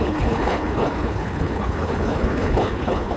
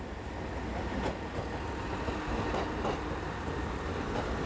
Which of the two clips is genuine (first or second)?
second